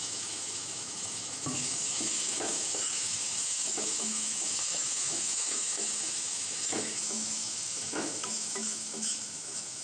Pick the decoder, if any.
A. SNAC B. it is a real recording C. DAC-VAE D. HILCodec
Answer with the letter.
C